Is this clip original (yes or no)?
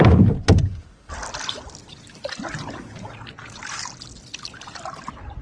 yes